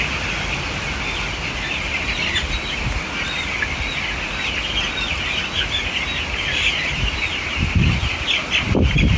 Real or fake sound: real